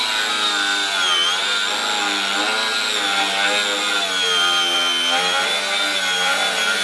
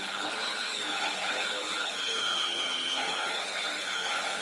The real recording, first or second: first